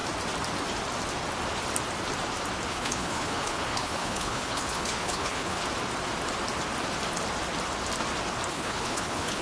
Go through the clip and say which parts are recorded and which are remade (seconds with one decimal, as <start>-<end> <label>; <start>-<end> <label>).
0.0-2.7 recorded; 2.7-5.6 remade; 5.6-8.5 recorded; 8.5-9.4 remade